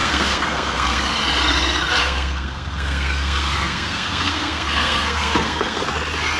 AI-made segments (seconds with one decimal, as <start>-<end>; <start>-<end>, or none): 0.0-1.0; 2.0-5.8